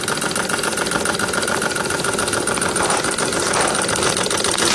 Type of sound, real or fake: real